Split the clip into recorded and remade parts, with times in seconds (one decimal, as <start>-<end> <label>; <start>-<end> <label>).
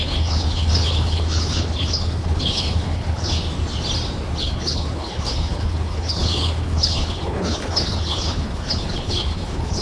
0.0-3.4 remade; 3.4-4.4 recorded; 4.4-9.8 remade